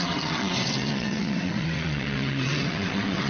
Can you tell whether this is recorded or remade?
remade